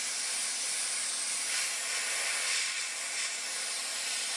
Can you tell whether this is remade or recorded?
recorded